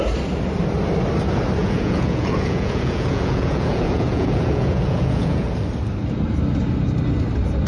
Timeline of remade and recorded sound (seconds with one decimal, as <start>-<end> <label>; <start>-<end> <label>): 0.0-1.6 recorded; 1.6-5.5 remade; 5.5-7.7 recorded